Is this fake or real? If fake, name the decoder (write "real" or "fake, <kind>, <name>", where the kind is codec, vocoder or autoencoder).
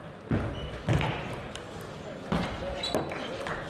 real